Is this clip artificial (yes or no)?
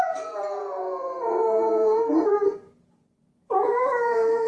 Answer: yes